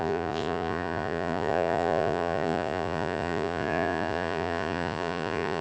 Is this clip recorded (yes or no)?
no